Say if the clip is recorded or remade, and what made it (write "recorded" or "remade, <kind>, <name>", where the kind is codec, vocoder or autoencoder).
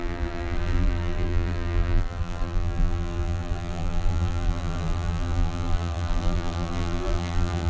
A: remade, vocoder, BigVGAN v2